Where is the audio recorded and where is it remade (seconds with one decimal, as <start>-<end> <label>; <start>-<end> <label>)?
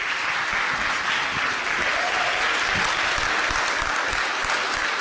0.0-5.0 recorded